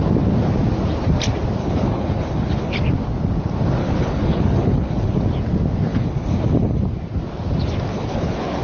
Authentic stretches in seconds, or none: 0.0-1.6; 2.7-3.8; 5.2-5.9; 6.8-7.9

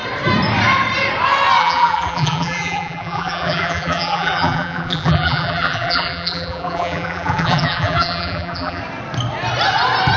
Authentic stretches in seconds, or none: 0.0-1.6; 8.8-10.2